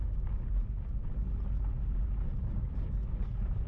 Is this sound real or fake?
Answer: real